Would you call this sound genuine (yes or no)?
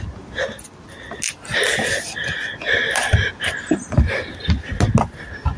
yes